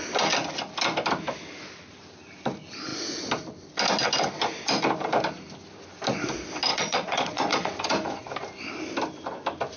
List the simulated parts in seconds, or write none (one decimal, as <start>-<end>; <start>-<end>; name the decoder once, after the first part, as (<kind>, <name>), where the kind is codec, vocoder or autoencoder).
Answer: 6.7-7.7 (vocoder, Vocos)